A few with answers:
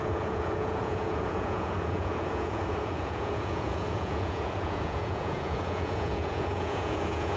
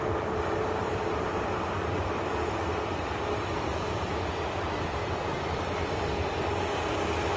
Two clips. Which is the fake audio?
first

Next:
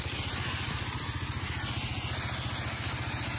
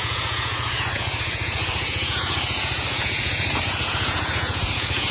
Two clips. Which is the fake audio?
second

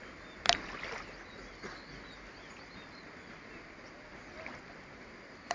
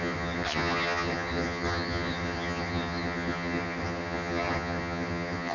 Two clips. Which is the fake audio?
second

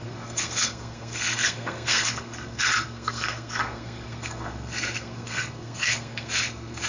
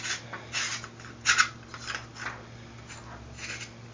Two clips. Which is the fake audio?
first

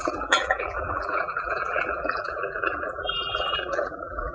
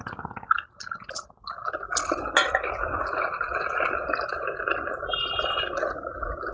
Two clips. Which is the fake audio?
first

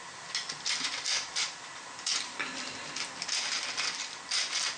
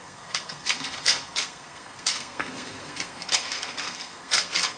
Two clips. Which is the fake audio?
second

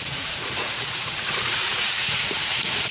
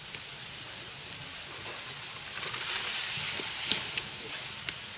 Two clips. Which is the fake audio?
first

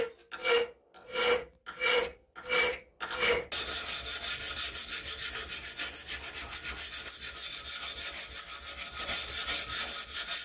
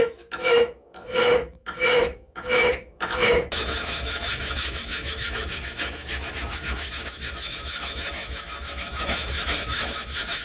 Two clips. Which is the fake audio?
second